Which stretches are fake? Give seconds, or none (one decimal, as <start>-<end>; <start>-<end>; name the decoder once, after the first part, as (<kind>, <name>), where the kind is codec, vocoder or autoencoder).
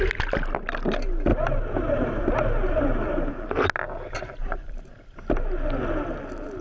1.3-2.2 (vocoder, BigVGAN v2); 4.4-4.9